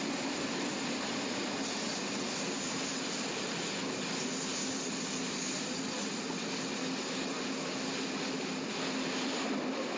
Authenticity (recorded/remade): recorded